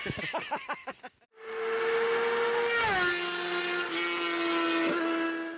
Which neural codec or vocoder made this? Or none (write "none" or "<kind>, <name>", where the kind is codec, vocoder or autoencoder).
none